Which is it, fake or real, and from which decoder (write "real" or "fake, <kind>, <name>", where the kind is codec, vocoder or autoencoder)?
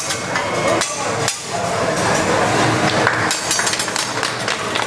real